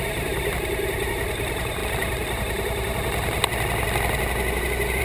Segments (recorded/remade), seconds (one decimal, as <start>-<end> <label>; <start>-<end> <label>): 0.0-1.8 remade; 1.8-5.0 recorded